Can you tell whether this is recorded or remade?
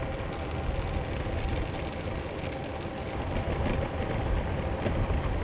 recorded